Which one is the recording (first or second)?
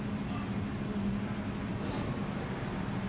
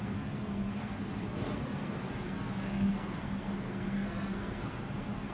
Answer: first